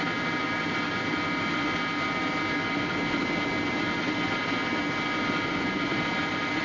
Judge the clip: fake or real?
real